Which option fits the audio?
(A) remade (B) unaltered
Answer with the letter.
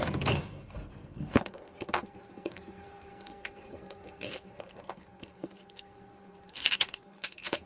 A